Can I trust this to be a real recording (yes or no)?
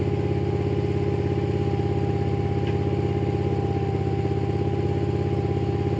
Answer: yes